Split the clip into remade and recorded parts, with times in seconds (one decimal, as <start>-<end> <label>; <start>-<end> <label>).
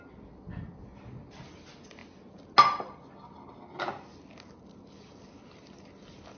0.0-6.4 recorded